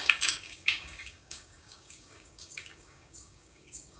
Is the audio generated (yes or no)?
yes